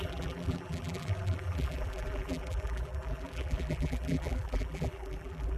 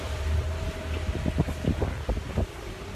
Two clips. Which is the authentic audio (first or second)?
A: second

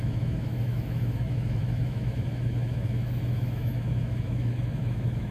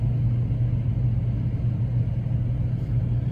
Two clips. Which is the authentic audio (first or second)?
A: second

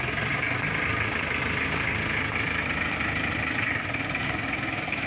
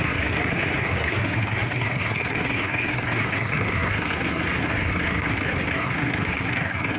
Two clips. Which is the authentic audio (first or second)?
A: first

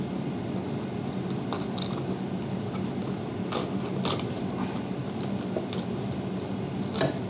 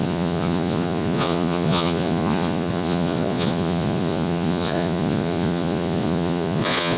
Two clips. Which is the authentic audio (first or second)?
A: first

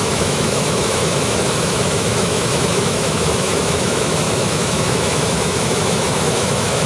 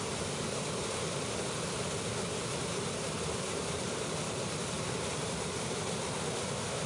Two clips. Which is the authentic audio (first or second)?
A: second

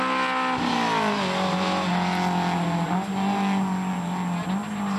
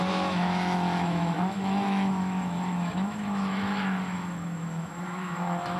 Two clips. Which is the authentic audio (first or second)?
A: first